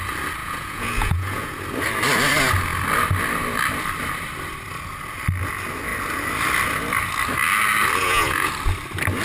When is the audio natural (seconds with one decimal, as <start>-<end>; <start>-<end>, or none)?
0.0-0.4; 1.6-8.0; 8.5-9.2